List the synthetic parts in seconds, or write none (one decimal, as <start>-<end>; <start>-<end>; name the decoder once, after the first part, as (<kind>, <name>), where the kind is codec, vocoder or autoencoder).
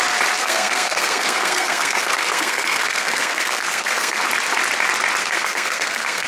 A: 0.4-4.2 (codec, SNAC); 5.2-6.3